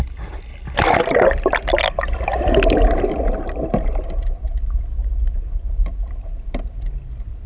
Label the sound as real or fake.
real